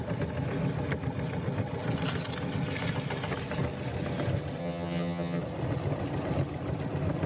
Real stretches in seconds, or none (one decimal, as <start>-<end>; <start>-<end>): 0.0-4.6; 5.4-7.3